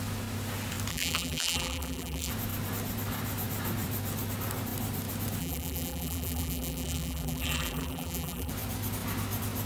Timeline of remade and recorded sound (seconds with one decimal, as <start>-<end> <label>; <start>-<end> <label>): 0.0-0.9 recorded; 0.9-2.3 remade; 2.3-5.4 recorded; 5.4-8.5 remade; 8.5-9.7 recorded